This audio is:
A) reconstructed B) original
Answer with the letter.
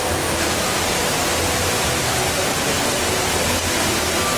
B